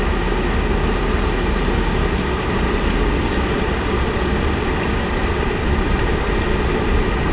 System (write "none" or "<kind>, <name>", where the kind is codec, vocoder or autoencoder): none